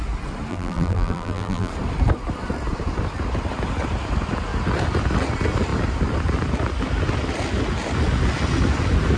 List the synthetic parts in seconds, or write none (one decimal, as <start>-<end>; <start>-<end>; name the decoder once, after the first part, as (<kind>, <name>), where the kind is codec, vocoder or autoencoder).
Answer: 0.5-1.7 (vocoder, BigVGAN v2)

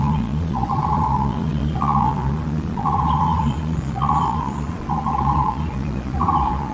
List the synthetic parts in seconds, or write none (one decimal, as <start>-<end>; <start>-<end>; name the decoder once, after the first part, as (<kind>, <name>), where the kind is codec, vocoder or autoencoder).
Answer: 0.0-6.7 (vocoder, Vocos)

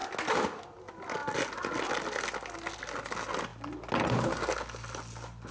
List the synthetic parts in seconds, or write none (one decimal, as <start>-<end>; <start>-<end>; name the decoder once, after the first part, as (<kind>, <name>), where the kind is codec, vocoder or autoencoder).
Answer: none

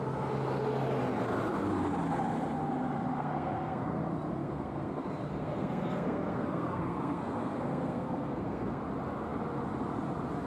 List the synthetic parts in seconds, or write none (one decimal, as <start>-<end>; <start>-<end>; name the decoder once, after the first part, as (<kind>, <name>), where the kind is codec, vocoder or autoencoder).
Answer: 3.1-4.0 (codec, SNAC); 4.4-8.8

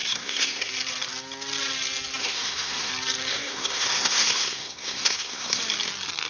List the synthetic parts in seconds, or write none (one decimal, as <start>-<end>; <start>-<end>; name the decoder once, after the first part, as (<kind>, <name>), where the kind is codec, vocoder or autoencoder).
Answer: 0.0-0.7 (codec, SNAC); 2.2-2.9; 3.3-5.6

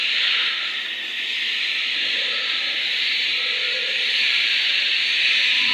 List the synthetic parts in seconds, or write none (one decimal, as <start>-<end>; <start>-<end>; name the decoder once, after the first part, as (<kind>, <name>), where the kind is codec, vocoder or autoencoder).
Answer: 0.0-5.7 (vocoder, BigVGAN v2)

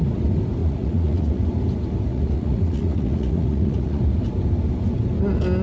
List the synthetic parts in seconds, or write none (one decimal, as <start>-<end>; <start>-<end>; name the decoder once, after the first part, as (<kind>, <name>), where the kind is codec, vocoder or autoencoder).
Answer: 0.6-1.4 (vocoder, Vocos); 2.1-4.0

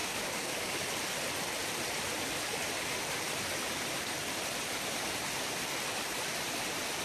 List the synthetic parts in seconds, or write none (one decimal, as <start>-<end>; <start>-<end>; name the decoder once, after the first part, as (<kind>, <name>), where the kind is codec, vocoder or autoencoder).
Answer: 0.0-0.8 (codec, DAC)